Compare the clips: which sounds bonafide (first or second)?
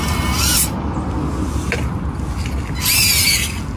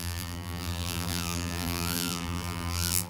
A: first